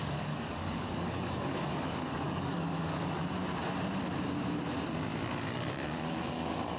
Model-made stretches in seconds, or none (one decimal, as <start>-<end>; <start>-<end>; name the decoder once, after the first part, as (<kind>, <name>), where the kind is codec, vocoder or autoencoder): 0.0-3.2 (codec, DAC); 5.3-6.8